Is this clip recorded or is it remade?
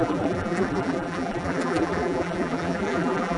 remade